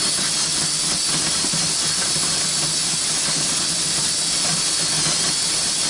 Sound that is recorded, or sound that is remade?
recorded